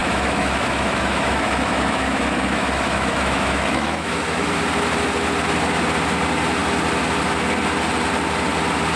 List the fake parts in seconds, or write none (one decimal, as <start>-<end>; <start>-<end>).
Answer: 0.0-4.6